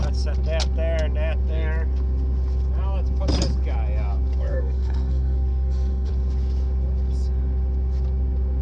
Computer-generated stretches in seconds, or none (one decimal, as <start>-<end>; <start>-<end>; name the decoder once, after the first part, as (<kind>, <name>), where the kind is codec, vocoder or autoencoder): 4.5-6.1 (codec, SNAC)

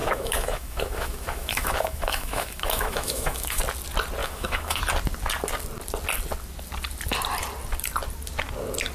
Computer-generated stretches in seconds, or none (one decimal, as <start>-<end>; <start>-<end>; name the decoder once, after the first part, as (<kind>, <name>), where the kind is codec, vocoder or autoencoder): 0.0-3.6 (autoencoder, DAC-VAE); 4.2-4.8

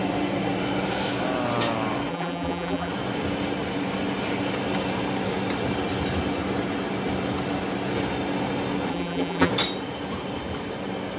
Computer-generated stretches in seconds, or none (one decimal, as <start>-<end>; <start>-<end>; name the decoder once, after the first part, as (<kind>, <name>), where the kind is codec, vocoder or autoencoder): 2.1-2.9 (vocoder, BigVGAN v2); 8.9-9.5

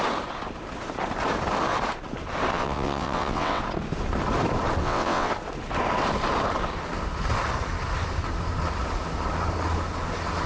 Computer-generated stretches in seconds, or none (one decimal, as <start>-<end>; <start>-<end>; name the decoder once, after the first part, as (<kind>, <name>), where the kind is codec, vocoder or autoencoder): 2.5-3.6 (vocoder, WaveNeXt); 4.8-5.3